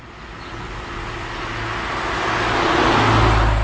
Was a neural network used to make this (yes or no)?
no